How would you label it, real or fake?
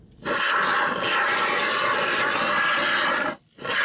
real